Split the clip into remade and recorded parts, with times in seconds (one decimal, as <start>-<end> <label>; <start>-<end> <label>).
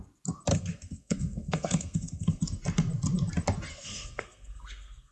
0.0-0.5 recorded; 0.5-2.4 remade; 2.4-3.7 recorded; 3.7-5.1 remade